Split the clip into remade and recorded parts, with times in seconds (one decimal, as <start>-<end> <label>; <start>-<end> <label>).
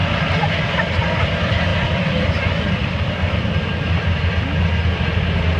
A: 0.0-1.7 recorded; 1.7-3.5 remade; 3.5-5.6 recorded